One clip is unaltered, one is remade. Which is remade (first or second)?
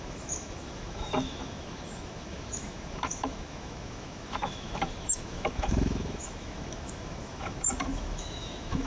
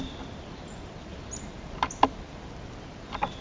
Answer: first